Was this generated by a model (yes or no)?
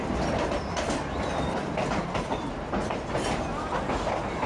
no